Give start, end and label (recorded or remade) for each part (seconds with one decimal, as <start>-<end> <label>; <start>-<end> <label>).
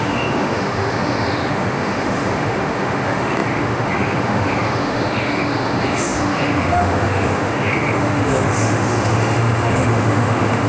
0.0-10.7 remade